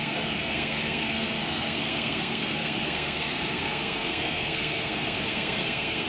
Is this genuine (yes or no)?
no